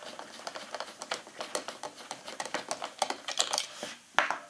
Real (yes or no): yes